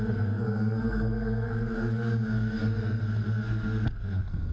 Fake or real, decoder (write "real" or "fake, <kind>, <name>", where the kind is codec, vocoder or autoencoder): fake, codec, SNAC